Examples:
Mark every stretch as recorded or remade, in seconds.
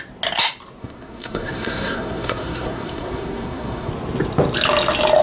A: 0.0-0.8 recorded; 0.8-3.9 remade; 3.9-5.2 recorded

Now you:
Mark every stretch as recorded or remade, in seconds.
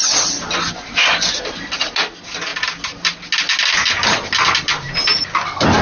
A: 0.0-5.8 recorded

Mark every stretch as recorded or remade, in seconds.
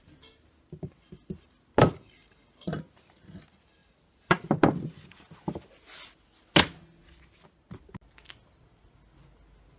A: 0.0-9.8 recorded